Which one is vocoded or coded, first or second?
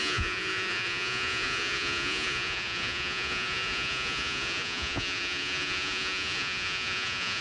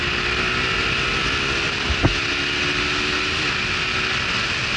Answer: first